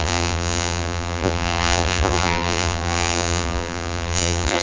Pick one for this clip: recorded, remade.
remade